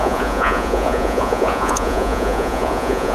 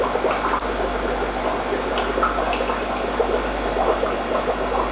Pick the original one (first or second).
second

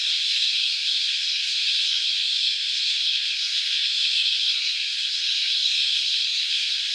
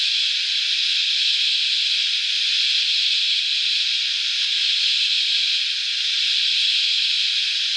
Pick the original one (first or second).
second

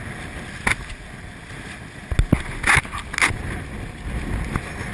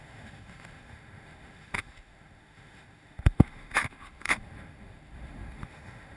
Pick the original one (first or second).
first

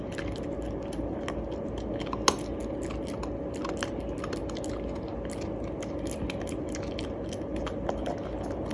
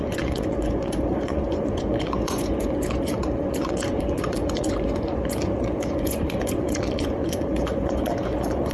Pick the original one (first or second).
first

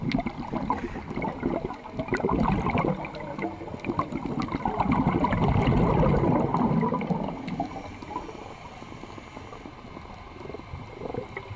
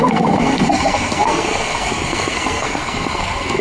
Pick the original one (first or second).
first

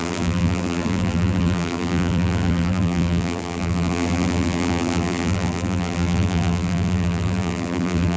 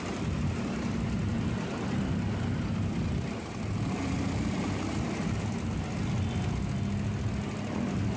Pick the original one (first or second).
second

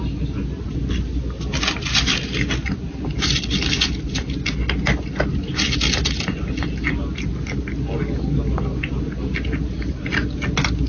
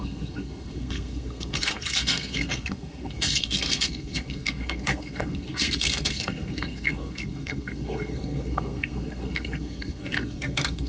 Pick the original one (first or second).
first